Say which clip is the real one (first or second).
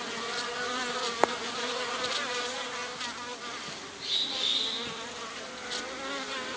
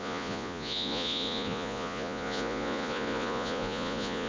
first